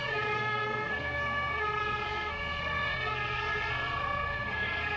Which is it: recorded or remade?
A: remade